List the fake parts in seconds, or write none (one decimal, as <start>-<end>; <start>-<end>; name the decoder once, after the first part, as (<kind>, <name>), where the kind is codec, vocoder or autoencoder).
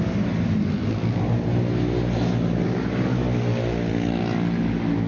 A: none